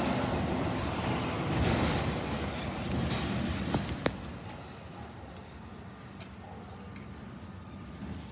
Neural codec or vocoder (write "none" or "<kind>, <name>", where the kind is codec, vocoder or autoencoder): none